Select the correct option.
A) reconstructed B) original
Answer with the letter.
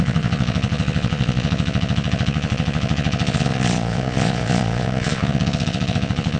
A